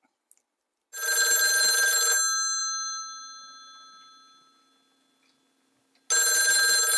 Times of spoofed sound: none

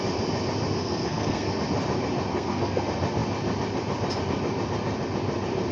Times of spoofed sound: 0.8-1.5; 2.3-2.8

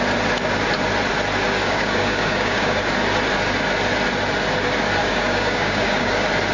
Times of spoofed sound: 1.6-2.8; 5.0-6.1

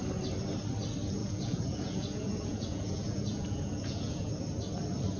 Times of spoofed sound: 1.2-4.3

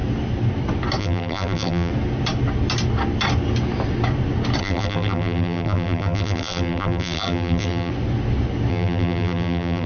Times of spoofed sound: 1.0-1.9; 4.6-7.9; 8.7-9.9